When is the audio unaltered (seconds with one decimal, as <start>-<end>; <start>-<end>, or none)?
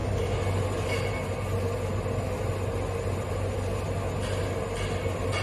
0.0-5.4